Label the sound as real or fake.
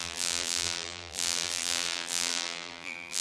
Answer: fake